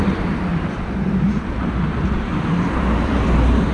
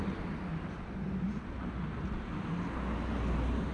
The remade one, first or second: first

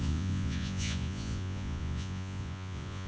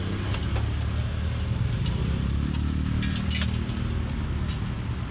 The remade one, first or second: first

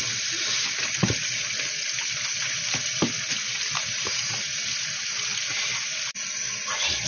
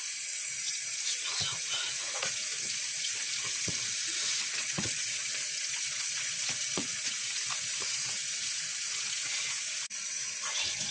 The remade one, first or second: second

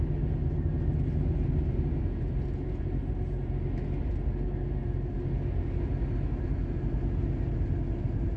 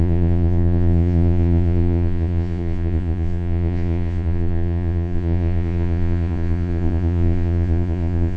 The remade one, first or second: second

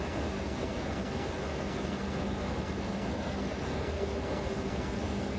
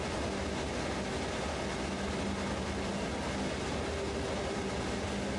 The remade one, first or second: first